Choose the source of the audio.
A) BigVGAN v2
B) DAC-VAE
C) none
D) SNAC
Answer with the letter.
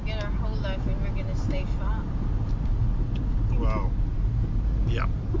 C